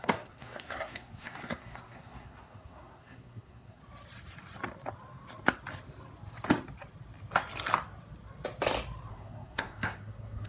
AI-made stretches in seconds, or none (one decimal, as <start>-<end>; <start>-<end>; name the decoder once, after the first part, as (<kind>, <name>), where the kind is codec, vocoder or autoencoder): 0.0-3.8 (codec, SNAC); 9.1-10.5